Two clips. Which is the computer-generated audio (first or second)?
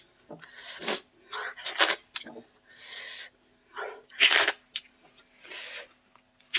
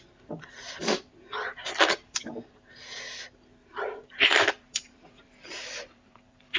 second